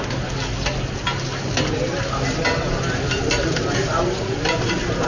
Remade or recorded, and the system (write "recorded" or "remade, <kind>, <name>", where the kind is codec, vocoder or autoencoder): recorded